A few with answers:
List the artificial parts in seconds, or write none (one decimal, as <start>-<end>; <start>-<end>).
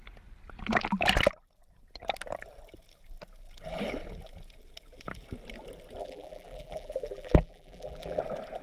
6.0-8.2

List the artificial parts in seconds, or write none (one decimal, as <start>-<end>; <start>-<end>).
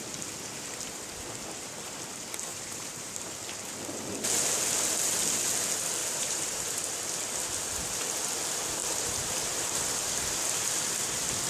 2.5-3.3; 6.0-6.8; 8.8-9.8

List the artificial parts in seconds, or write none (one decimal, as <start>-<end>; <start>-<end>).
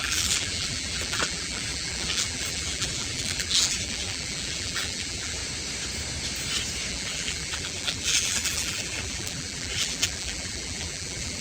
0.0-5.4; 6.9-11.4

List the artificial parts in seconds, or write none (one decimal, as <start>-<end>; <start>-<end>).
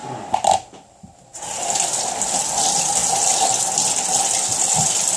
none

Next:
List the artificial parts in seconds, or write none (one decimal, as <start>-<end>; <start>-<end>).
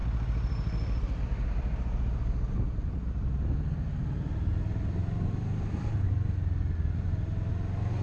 none